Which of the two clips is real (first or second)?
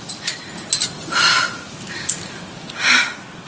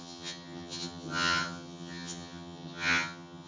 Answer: first